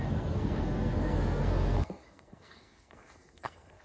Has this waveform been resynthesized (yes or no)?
yes